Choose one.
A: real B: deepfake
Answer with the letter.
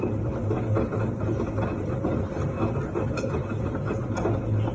A